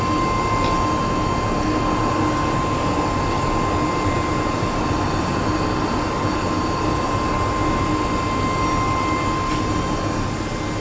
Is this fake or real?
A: real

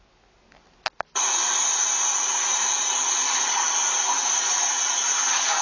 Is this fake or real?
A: real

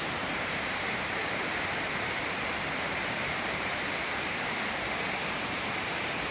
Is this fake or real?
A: fake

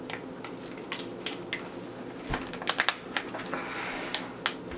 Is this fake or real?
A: real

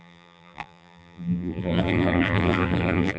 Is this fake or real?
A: fake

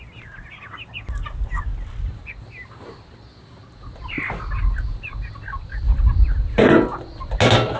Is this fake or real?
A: real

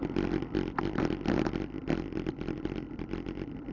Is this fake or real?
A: real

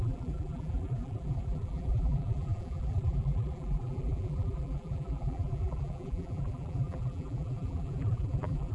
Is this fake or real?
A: fake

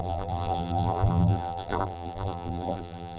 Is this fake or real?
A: fake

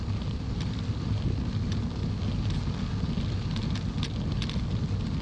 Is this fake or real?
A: real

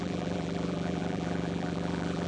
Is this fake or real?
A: fake